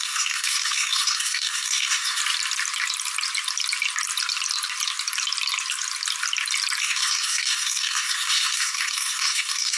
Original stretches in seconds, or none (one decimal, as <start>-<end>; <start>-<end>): 2.2-6.8